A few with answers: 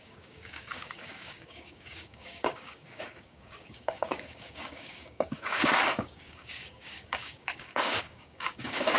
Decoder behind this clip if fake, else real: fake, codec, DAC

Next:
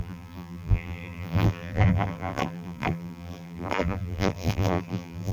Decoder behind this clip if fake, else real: fake, vocoder, BigVGAN v2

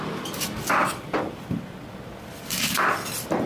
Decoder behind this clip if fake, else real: fake, vocoder, BigVGAN v2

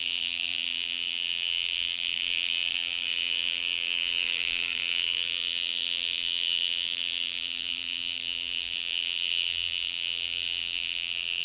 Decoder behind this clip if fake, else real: fake, vocoder, BigVGAN v2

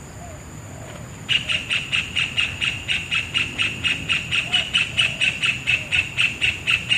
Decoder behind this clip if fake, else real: real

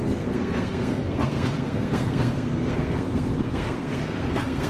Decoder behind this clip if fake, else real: fake, codec, SNAC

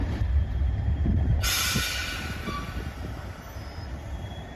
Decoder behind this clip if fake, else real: fake, vocoder, BigVGAN v2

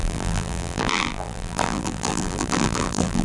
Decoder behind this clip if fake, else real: fake, vocoder, BigVGAN v2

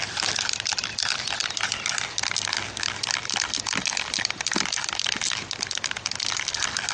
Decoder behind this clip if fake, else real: real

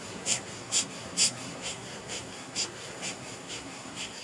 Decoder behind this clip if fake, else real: fake, codec, SNAC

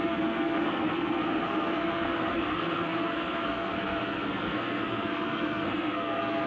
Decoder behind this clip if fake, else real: fake, codec, SNAC